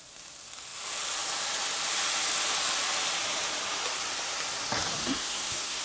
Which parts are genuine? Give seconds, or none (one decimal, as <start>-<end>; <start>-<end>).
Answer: 0.0-5.0